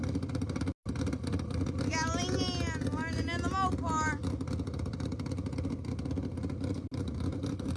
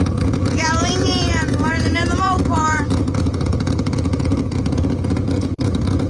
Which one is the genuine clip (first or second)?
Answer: first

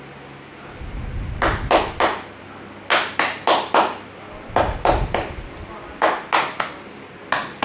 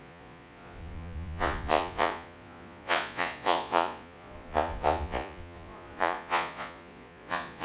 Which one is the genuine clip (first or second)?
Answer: first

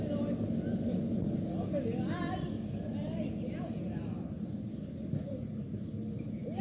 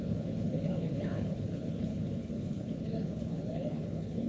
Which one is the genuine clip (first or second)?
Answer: first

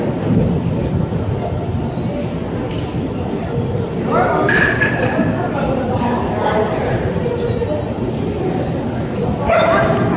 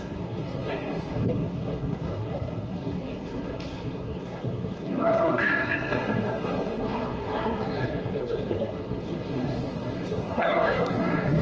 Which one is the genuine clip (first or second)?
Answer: first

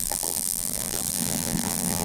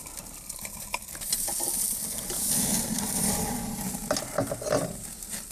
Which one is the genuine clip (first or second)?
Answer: second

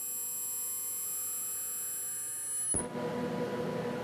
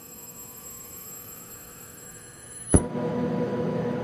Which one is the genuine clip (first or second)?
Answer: first